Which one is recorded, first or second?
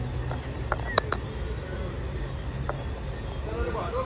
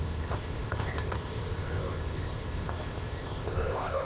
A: first